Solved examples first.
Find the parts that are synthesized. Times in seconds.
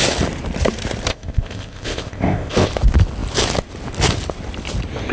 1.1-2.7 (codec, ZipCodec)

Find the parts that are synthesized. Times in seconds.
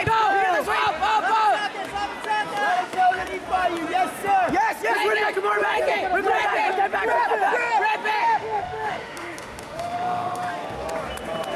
2.7-3.2 (autoencoder, DAC-VAE); 8.2-10.5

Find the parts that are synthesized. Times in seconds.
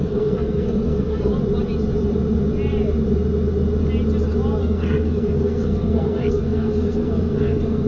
0.0-1.3 (codec, SNAC); 4.6-7.9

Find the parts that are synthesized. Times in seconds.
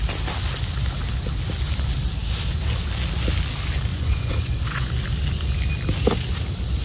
3.9-4.9 (vocoder, Vocos)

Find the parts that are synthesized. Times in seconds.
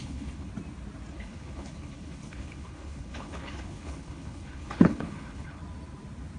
0.0-0.5 (codec, HILCodec); 1.1-5.6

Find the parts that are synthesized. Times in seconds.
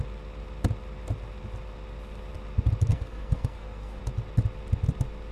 2.9-4.0 (codec, SNAC)